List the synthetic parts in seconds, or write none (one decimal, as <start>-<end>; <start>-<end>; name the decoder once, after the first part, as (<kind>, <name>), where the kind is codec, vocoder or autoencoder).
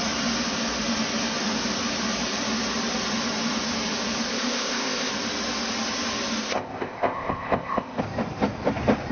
4.3-5.1 (codec, ZipCodec); 6.4-8.0